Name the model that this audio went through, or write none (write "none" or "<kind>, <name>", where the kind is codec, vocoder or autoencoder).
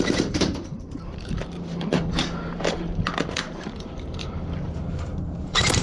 vocoder, BigVGAN v2